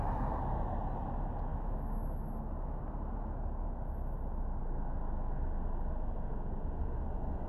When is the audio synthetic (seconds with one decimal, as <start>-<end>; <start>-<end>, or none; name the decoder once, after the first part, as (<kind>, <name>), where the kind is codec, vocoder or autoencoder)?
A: 1.5-2.8 (autoencoder, DAC-VAE)